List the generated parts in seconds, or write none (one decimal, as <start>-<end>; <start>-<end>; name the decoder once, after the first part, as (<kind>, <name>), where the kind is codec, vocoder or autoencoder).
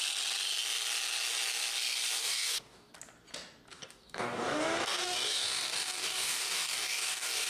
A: 2.2-2.9 (codec, DAC); 3.7-7.5